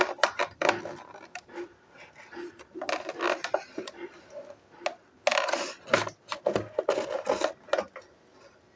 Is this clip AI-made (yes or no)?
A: no